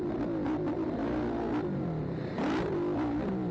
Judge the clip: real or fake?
real